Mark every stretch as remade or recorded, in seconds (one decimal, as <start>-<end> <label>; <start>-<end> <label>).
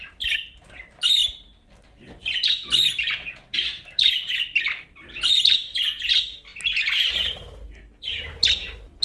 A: 0.0-1.2 recorded; 1.2-6.1 remade; 6.1-9.0 recorded